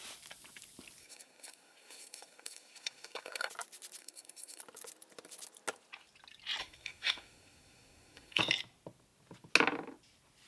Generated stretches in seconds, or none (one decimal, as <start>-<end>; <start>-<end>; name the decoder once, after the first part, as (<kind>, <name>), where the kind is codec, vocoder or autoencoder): 1.0-3.5 (codec, SNAC); 4.0-4.6; 6.6-8.4

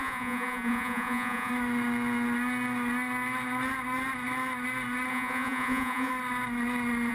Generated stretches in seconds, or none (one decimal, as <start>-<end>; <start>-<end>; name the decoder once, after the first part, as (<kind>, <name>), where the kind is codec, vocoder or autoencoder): 0.0-1.5 (vocoder, Vocos); 5.1-6.1

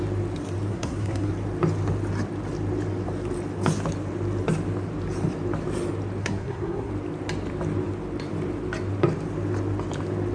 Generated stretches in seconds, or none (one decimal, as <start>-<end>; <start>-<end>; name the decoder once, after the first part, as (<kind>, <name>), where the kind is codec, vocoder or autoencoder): 0.7-1.3 (codec, SNAC); 6.2-6.9

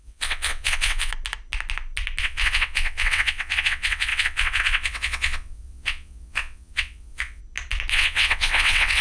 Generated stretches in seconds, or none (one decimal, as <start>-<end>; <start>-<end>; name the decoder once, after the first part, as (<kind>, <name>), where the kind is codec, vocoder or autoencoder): 0.0-1.1 (vocoder, WaveNeXt); 2.2-7.4; 7.9-9.0

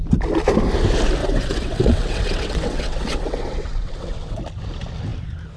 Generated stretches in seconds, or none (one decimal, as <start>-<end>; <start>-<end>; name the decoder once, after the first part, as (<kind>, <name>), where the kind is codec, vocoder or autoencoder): 1.2-4.4 (vocoder, WaveNeXt)

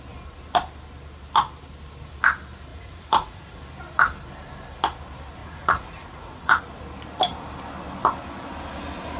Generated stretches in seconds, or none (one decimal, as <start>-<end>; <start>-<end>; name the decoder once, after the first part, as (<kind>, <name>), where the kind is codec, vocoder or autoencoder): 2.7-3.6 (vocoder, Vocos); 5.4-6.6